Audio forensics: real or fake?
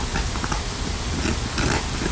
real